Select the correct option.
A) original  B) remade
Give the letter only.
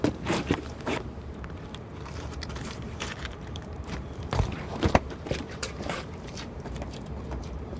B